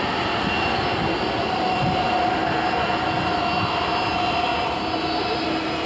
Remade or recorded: recorded